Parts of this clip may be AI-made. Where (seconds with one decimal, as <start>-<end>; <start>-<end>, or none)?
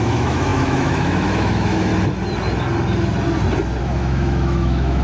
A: 0.0-1.9; 3.8-5.0